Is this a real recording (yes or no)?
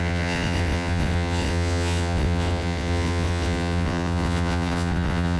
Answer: no